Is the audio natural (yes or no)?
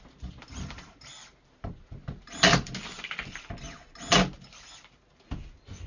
yes